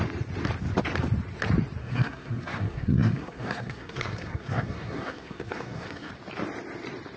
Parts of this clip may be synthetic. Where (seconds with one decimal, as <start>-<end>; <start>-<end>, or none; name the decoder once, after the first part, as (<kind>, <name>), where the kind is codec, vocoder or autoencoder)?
1.8-6.1 (codec, SNAC)